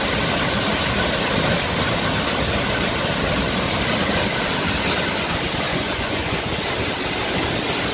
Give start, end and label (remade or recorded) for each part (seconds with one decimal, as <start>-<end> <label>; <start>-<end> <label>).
0.0-5.7 recorded; 5.7-6.5 remade; 6.5-7.9 recorded